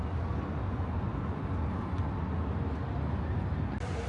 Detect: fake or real real